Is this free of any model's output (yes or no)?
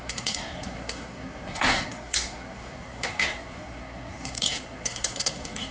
no